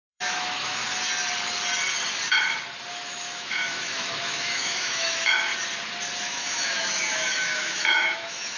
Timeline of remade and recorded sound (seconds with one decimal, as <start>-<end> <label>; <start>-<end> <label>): 0.0-0.8 remade; 0.8-2.9 recorded; 2.9-5.5 remade; 5.5-6.2 recorded; 6.2-8.6 remade